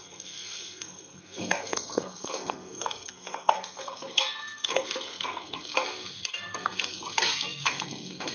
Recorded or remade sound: remade